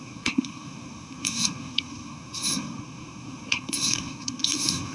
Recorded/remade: remade